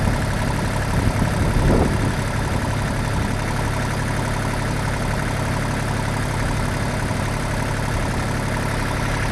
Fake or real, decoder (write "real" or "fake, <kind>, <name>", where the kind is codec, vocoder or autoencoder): real